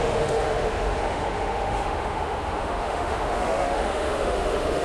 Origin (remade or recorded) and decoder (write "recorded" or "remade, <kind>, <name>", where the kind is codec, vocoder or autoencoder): remade, autoencoder, DAC-VAE